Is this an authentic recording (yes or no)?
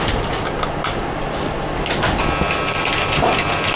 yes